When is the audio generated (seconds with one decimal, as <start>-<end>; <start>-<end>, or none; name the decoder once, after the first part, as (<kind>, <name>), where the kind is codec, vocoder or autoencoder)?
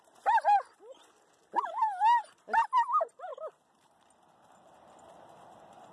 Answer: none